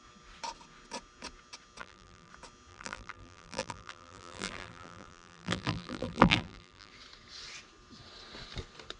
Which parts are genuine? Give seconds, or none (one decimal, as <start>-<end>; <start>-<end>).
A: 0.0-1.8; 2.3-2.7; 6.9-9.0